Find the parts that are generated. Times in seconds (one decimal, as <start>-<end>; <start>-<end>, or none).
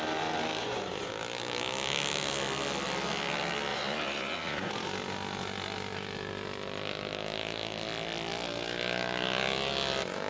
0.6-1.1; 3.7-4.7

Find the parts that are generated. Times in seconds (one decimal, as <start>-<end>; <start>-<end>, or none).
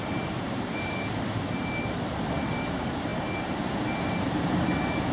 0.0-5.1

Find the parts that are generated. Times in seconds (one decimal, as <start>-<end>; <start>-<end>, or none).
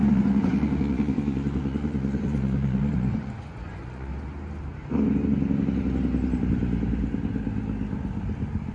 0.0-4.1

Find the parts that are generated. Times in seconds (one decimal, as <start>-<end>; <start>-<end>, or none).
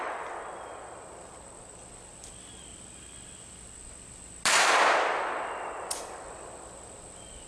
none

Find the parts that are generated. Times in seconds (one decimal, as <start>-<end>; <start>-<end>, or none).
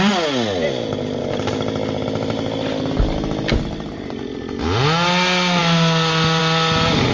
none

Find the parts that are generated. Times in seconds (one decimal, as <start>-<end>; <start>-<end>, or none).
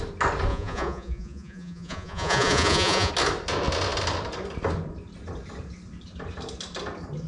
0.5-3.1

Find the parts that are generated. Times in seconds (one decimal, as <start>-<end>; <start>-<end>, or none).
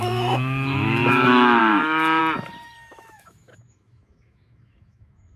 0.0-2.2; 2.9-5.4